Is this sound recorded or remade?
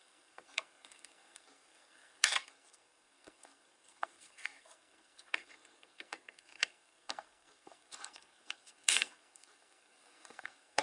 remade